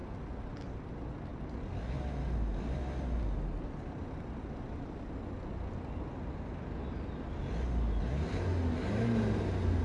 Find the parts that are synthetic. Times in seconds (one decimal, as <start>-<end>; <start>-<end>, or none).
none